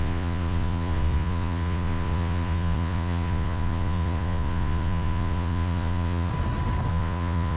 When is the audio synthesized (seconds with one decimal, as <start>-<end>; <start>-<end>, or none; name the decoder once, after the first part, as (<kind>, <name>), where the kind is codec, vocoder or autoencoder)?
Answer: 0.0-6.3 (vocoder, Vocos); 6.9-7.6